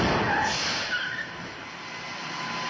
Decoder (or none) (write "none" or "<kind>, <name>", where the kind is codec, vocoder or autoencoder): none